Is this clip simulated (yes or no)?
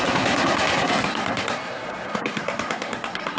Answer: yes